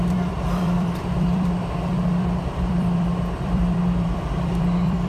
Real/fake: fake